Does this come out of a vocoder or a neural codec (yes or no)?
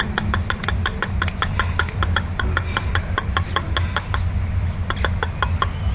no